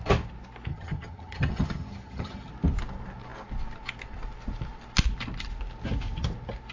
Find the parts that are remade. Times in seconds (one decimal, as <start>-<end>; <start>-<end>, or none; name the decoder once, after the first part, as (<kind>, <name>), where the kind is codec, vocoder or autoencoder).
0.7-2.5 (vocoder, HiFi-GAN)